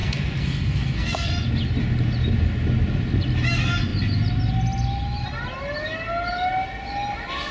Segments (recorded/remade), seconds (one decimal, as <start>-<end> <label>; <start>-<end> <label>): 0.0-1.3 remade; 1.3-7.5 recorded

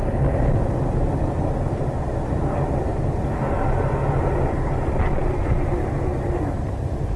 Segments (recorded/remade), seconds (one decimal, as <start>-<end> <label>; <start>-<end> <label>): 0.0-7.2 recorded

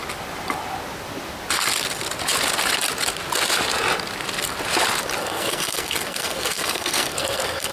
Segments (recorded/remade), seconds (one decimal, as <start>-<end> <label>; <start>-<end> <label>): 0.0-5.2 recorded; 5.2-7.7 remade